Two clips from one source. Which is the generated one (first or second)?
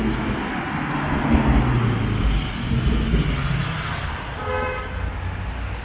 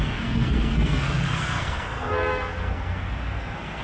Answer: second